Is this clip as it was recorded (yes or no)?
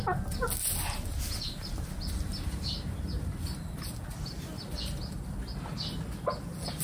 yes